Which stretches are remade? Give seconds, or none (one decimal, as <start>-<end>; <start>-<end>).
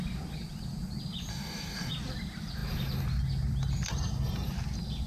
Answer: 1.3-1.9